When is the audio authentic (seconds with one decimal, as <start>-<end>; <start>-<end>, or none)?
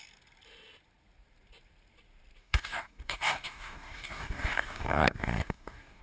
0.0-2.4